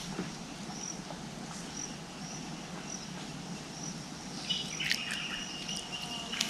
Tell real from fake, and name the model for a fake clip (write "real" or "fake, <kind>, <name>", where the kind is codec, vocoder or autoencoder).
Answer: real